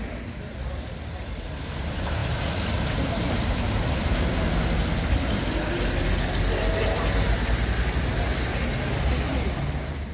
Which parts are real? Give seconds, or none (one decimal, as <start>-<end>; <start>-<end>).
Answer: 0.0-10.1